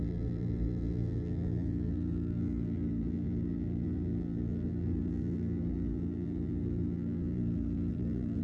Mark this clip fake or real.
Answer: fake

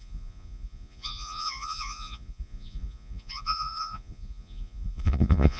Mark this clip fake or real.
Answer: fake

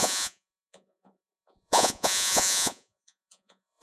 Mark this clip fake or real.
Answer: fake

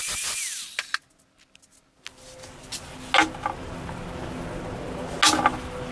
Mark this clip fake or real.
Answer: real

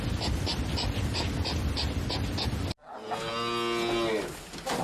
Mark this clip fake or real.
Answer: real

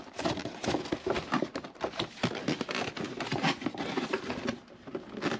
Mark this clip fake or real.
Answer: real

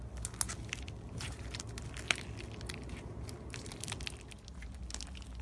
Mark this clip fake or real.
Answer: real